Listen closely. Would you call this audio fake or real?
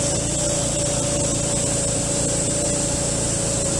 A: real